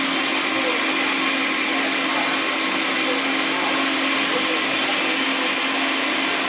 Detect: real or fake real